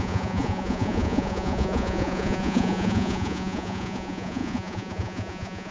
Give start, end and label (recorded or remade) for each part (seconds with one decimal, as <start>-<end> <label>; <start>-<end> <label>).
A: 0.0-5.7 remade